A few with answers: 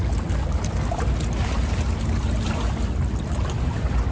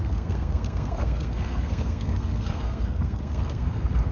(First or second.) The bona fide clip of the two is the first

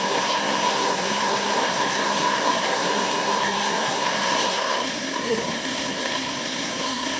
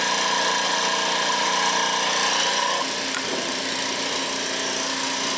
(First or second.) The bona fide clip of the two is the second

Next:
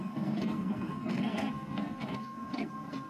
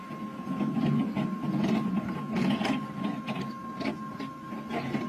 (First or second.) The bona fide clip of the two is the second